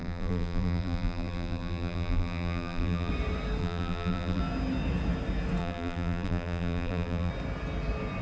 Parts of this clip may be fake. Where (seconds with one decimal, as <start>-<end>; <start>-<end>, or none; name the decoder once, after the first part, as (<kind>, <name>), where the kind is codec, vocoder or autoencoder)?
0.0-3.1 (vocoder, BigVGAN v2); 3.6-4.4; 5.6-7.3